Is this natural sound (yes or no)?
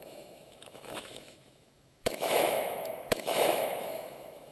no